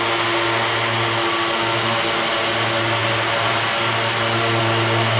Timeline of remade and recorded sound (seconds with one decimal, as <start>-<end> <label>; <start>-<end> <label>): 0.0-5.2 recorded